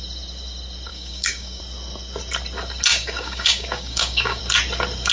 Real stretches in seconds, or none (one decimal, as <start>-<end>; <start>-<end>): 0.0-0.9; 1.6-2.9; 4.4-5.1